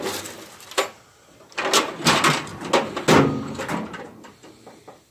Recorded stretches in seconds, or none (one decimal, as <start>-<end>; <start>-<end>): 0.0-5.1